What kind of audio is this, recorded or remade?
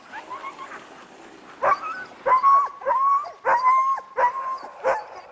recorded